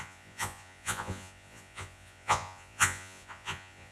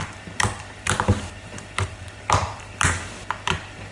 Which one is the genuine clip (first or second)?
second